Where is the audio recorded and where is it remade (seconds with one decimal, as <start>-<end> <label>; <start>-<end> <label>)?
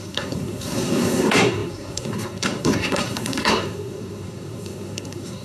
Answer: 0.0-5.4 remade